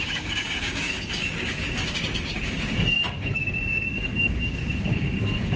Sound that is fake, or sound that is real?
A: fake